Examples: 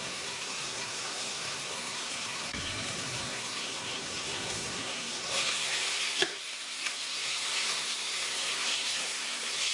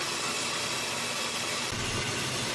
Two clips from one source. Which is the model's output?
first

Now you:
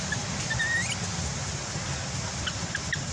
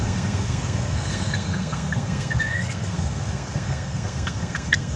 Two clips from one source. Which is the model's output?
second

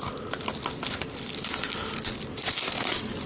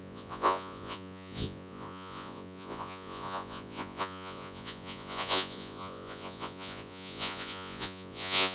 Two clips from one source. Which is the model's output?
second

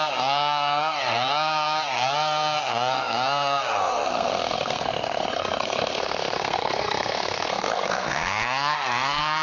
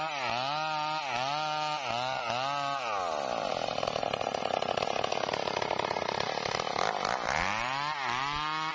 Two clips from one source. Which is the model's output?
first